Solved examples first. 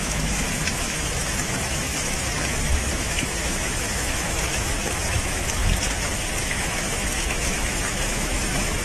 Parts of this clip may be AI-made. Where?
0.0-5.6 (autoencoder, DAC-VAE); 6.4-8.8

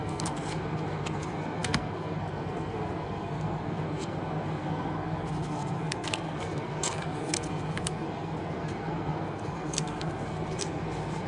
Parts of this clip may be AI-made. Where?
0.0-11.3 (codec, SNAC)

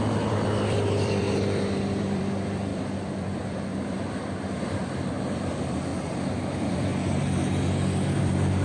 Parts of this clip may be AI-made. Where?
0.0-5.9 (vocoder, BigVGAN v2); 6.4-6.9; 8.2-8.6

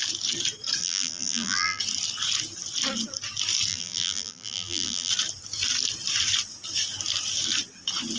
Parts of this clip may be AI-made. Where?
0.8-1.8 (vocoder, BigVGAN v2); 3.7-5.1

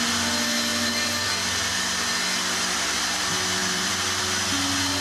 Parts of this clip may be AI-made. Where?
0.7-1.3 (vocoder, BigVGAN v2); 3.6-4.2

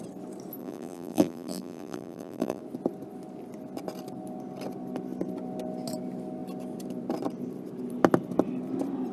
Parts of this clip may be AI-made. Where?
0.6-2.6 (vocoder, BigVGAN v2)